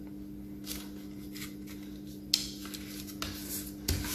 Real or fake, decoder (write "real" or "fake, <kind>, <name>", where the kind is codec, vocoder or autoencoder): real